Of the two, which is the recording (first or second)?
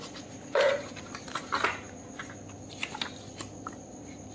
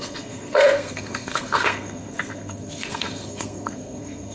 first